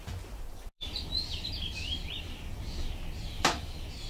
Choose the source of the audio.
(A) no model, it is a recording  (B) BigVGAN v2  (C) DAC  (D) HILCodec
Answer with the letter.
B